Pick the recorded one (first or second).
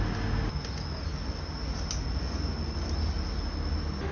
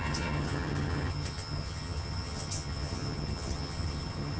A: first